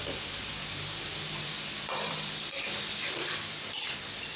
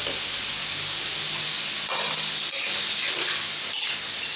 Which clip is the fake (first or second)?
first